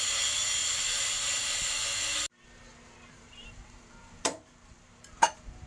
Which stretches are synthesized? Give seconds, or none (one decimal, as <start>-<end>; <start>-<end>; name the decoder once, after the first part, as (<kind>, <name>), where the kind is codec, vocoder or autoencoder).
0.0-1.8 (vocoder, BigVGAN v2); 3.1-5.7